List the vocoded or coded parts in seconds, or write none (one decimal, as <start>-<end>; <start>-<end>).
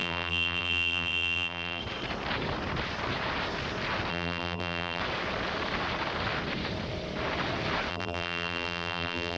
0.0-1.8; 4.1-5.0; 7.9-9.4